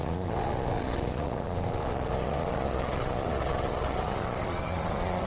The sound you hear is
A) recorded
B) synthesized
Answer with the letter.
B